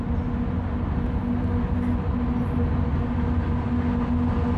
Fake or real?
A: real